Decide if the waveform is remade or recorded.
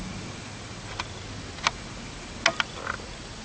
recorded